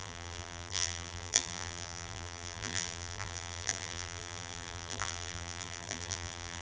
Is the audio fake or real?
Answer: fake